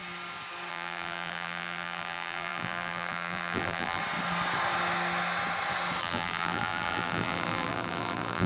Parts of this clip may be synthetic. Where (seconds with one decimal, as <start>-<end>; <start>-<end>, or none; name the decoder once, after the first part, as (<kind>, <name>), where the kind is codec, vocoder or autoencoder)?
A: 0.7-4.0 (vocoder, BigVGAN v2); 6.0-8.5